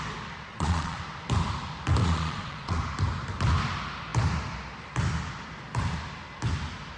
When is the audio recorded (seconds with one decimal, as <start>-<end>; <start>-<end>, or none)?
0.0-0.5; 1.0-2.0; 2.8-7.0